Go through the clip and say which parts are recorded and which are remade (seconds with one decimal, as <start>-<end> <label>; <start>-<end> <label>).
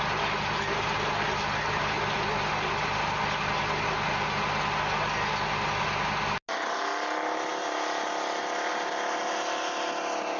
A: 0.0-10.4 recorded